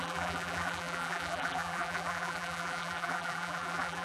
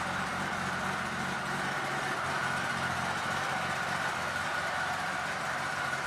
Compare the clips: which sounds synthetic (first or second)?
first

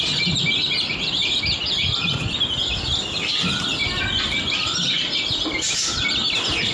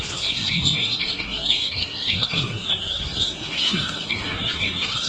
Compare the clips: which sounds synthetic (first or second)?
second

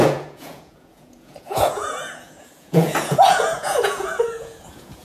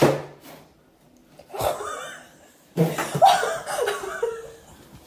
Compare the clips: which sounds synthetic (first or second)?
first